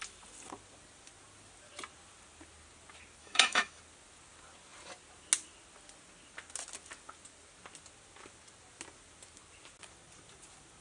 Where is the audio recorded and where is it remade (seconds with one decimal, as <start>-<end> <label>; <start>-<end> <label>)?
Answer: 0.0-3.2 recorded; 3.2-3.8 remade; 3.8-10.8 recorded